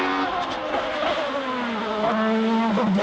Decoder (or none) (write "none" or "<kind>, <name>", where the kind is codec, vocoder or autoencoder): none